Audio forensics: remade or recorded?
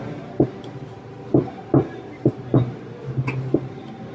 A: recorded